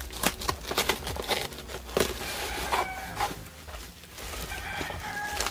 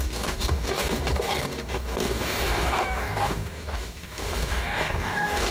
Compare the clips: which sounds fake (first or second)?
second